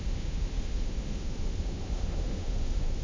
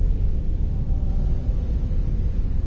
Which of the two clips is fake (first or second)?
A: first